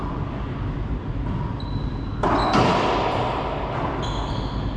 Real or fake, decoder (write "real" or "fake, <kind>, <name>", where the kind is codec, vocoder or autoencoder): real